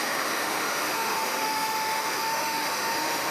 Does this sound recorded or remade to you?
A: remade